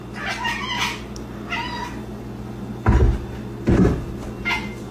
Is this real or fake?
real